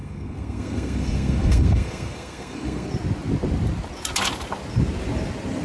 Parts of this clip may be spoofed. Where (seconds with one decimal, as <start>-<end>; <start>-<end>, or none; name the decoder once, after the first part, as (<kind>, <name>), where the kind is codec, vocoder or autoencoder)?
0.0-2.9 (codec, SNAC)